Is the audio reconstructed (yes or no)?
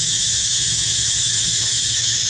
yes